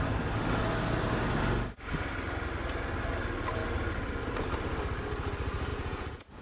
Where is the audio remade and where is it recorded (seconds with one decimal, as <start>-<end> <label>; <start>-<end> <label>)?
0.0-5.7 recorded; 5.7-6.4 remade

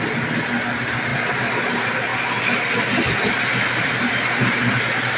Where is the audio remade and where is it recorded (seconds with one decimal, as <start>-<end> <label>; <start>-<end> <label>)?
0.0-5.2 recorded

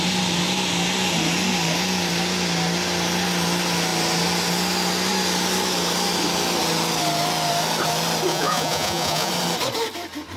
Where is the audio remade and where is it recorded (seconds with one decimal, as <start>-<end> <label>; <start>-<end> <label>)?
0.0-8.3 recorded; 8.3-9.3 remade; 9.3-10.4 recorded

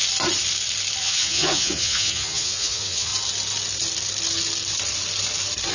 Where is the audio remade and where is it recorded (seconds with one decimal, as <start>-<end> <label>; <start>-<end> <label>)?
0.0-1.0 recorded; 1.0-3.1 remade; 3.1-5.7 recorded

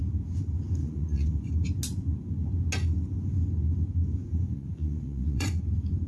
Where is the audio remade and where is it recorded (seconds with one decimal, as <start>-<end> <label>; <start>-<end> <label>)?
0.0-0.8 recorded; 0.8-1.5 remade; 1.5-4.3 recorded; 4.3-5.6 remade; 5.6-6.1 recorded

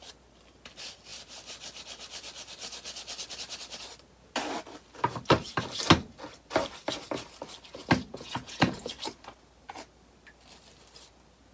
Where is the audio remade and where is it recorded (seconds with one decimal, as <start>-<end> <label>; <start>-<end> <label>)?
0.0-8.1 recorded; 8.1-8.9 remade; 8.9-11.5 recorded

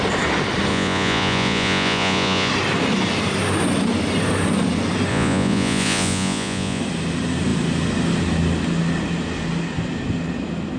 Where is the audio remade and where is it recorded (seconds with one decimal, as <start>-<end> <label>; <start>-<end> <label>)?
0.0-0.7 recorded; 0.7-2.5 remade; 2.5-5.1 recorded; 5.1-6.8 remade; 6.8-10.8 recorded

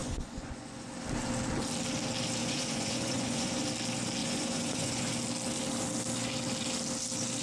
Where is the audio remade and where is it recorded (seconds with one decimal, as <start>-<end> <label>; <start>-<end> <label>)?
0.0-0.9 remade; 0.9-2.4 recorded; 2.4-3.6 remade; 3.6-4.2 recorded; 4.2-5.1 remade; 5.1-7.4 recorded